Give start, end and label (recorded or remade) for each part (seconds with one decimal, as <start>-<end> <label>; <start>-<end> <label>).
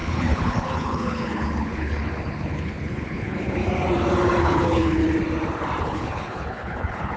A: 0.0-3.6 remade; 3.6-4.4 recorded; 4.4-5.0 remade; 5.0-5.8 recorded; 5.8-7.2 remade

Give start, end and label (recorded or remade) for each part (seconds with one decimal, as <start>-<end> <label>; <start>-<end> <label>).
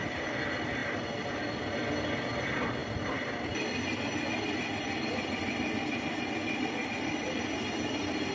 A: 0.0-8.3 recorded